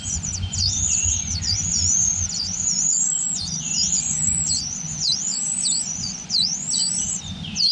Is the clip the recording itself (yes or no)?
no